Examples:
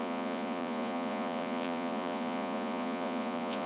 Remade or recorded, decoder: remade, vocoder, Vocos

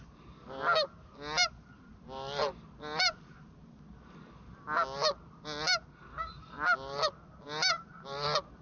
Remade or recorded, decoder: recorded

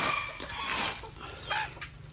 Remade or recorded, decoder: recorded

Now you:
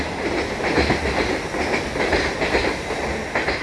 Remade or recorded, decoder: recorded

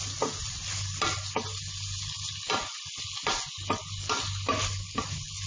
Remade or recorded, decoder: recorded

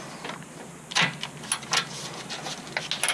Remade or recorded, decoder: recorded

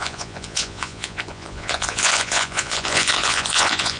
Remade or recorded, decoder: remade, vocoder, Vocos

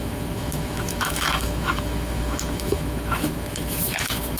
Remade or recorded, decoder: remade, autoencoder, DAC-VAE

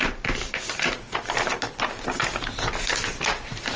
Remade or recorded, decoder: recorded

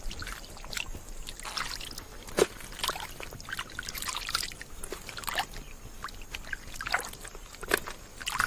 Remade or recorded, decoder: recorded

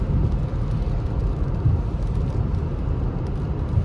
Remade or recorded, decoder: recorded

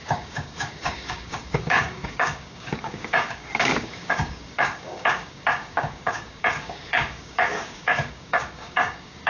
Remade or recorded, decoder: remade, codec, DAC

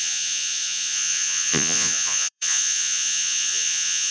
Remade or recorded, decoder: remade, vocoder, Vocos